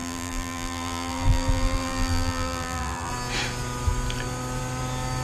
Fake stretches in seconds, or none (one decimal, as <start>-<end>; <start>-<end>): 0.0-3.1